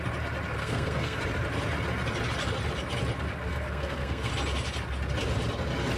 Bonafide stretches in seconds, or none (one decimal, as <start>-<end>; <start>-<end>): 0.0-0.6; 1.2-3.5; 4.3-6.0